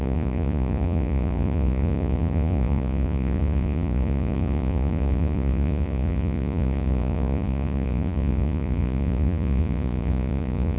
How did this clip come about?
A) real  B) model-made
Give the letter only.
B